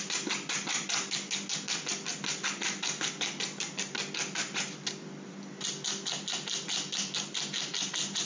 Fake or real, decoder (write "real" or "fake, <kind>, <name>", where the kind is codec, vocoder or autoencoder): real